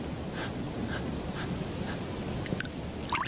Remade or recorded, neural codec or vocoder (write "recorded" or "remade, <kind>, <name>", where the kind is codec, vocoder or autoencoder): recorded